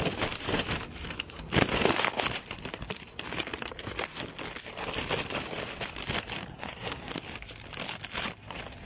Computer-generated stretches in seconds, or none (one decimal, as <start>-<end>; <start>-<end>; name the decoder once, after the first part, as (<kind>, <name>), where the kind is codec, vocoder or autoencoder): 6.5-7.1 (codec, SNAC)

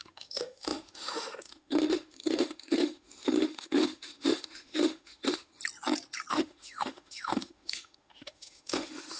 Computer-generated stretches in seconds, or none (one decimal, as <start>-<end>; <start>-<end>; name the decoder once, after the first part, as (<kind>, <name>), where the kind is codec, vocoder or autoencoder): 0.0-5.5 (autoencoder, DAC-VAE); 6.3-9.2

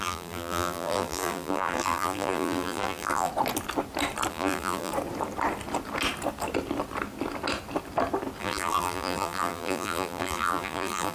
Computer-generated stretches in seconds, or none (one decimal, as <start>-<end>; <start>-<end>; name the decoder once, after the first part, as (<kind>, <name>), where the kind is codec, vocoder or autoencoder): 0.0-3.3 (vocoder, BigVGAN v2); 4.3-4.9; 8.4-11.1

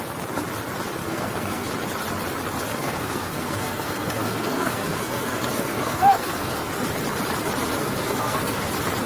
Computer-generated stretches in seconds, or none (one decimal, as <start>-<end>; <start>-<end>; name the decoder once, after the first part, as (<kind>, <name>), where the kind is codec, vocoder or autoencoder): 1.0-1.7 (codec, SNAC); 2.7-6.7; 7.8-8.7

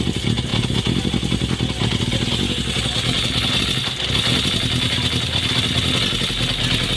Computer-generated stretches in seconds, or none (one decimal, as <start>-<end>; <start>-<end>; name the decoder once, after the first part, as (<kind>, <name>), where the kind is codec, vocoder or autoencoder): none

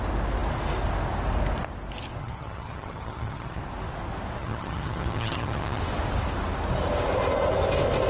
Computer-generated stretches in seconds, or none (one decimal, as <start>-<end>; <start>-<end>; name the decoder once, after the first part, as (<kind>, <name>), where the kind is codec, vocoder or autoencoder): 2.2-3.6 (vocoder, HiFi-GAN); 4.4-5.8